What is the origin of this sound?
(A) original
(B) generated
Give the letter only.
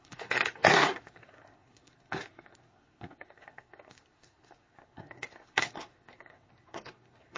B